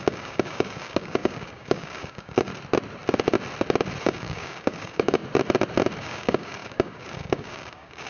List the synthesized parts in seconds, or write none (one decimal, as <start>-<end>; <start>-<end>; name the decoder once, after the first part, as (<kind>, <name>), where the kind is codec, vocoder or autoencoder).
0.0-2.5 (codec, DAC); 4.0-5.2; 6.0-8.1